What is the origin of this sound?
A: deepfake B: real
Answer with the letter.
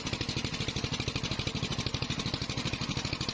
B